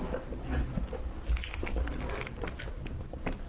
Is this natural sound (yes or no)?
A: yes